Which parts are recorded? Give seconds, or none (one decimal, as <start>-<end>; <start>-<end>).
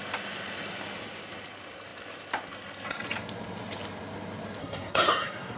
0.0-4.6